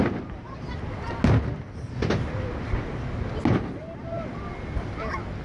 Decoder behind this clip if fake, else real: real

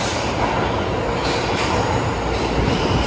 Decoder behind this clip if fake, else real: real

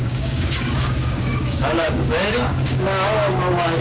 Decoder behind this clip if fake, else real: fake, codec, DAC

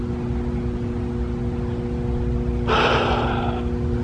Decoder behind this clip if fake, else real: real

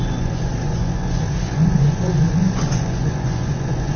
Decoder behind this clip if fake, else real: fake, vocoder, Vocos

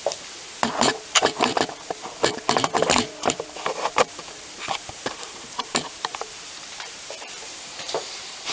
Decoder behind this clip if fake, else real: fake, vocoder, BigVGAN v2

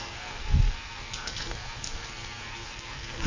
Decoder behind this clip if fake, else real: fake, codec, SNAC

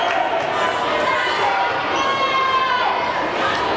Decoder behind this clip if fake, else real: real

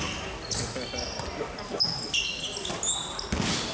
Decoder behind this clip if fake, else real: real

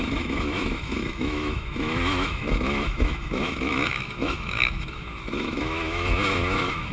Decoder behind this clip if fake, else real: fake, autoencoder, DAC-VAE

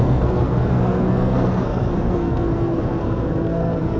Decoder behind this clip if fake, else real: fake, codec, SNAC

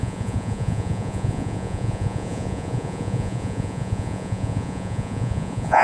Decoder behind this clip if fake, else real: fake, vocoder, Vocos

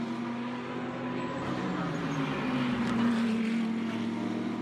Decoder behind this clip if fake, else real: real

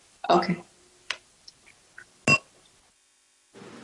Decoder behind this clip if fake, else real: real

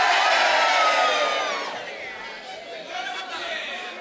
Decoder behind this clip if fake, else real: real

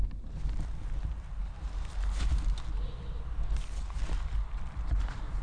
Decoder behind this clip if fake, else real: real